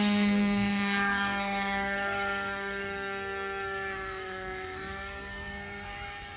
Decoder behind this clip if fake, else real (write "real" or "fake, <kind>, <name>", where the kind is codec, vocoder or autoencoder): fake, codec, SNAC